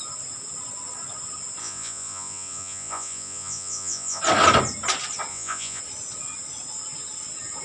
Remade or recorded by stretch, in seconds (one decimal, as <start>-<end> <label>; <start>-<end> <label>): 0.0-1.6 recorded; 1.6-4.2 remade; 4.2-5.3 recorded; 5.3-5.8 remade; 5.8-7.6 recorded